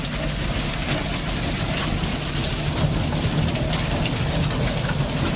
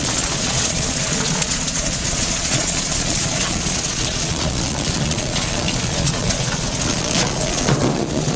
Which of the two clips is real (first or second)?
first